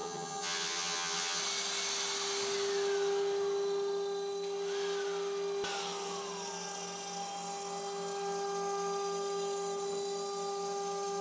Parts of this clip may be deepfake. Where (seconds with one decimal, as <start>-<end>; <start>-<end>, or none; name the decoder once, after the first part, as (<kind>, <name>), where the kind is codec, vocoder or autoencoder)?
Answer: 0.0-1.4 (vocoder, HiFi-GAN)